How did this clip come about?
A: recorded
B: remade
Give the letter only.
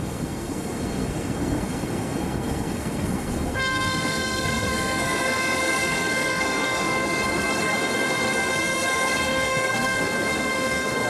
B